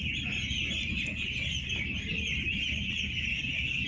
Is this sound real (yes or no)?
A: yes